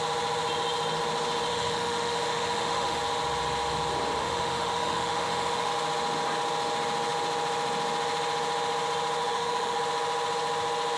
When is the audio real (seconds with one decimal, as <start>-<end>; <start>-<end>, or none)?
0.0-1.5; 3.0-4.2; 5.7-9.2; 9.8-11.0